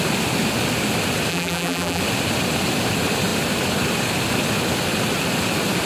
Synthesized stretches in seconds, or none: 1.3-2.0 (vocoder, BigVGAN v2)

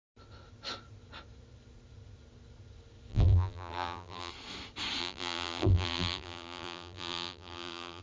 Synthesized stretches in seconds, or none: 3.1-4.3 (vocoder, BigVGAN v2); 5.0-8.0

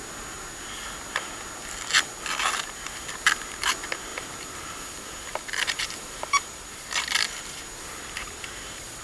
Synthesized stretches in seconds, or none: 4.1-9.0 (vocoder, BigVGAN v2)

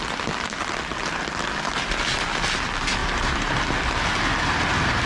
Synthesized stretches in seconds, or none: 3.0-3.6 (vocoder, BigVGAN v2)

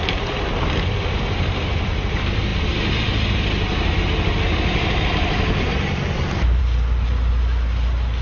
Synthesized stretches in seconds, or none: none

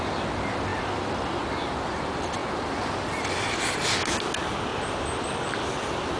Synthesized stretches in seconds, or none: none

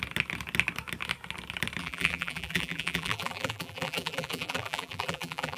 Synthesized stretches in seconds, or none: 1.8-5.6 (vocoder, BigVGAN v2)